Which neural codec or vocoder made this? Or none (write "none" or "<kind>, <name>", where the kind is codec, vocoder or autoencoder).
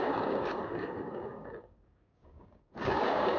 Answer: codec, DAC